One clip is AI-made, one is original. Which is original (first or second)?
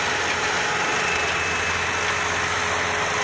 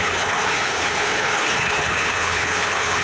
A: first